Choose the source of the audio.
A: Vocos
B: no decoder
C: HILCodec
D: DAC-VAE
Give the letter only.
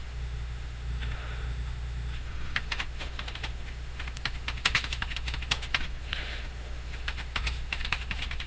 D